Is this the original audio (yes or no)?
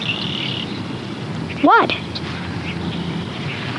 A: yes